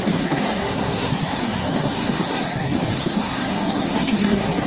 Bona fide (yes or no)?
no